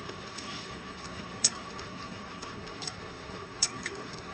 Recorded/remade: remade